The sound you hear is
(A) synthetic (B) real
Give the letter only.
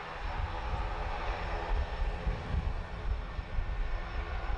B